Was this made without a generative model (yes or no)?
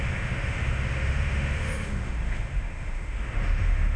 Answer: no